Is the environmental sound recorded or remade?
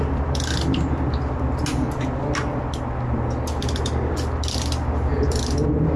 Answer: recorded